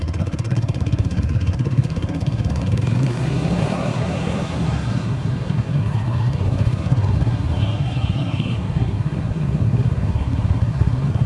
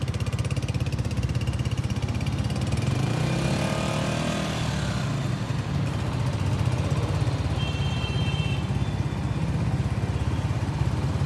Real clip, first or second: second